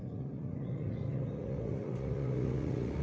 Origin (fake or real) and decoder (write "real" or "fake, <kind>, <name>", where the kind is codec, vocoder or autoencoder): fake, vocoder, Vocos